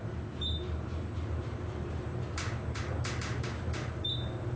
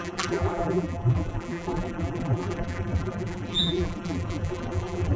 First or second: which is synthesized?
second